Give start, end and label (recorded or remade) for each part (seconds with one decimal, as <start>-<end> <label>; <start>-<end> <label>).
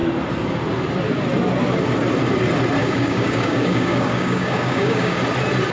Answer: 0.0-2.8 recorded; 2.8-5.2 remade; 5.2-5.7 recorded